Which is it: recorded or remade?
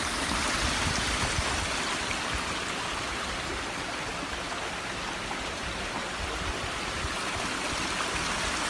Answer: recorded